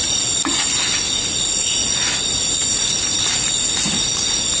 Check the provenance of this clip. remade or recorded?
recorded